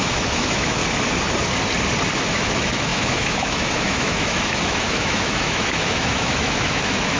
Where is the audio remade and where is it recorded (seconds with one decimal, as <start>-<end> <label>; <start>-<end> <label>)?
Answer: 0.0-0.8 remade; 0.8-2.3 recorded; 2.3-7.2 remade

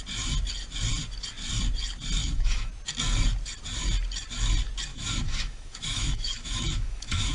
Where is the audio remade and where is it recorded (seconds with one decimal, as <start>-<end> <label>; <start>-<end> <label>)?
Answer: 0.0-2.2 recorded; 2.2-2.7 remade; 2.7-4.9 recorded; 4.9-7.3 remade

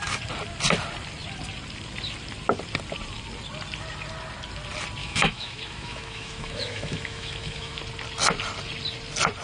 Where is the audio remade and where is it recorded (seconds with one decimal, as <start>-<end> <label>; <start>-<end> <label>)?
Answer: 0.0-5.0 recorded; 5.0-7.8 remade; 7.8-9.4 recorded

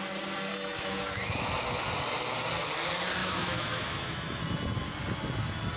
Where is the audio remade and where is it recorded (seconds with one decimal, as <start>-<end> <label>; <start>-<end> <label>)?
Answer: 0.0-0.5 recorded; 0.5-1.0 remade; 1.0-3.2 recorded; 3.2-4.4 remade; 4.4-5.8 recorded

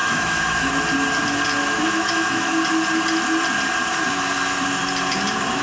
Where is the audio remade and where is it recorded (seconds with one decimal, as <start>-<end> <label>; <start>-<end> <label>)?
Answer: 0.0-0.7 remade; 0.7-1.6 recorded; 1.6-2.5 remade; 2.5-5.6 recorded

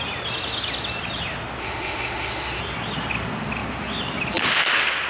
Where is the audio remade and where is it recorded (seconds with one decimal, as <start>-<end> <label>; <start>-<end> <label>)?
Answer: 0.0-1.6 recorded; 1.6-2.6 remade; 2.6-5.1 recorded